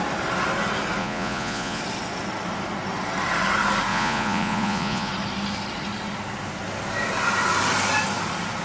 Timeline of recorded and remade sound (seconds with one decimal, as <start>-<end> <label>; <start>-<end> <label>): 0.0-1.0 recorded; 1.0-1.8 remade; 1.8-3.9 recorded; 3.9-5.1 remade; 5.1-8.6 recorded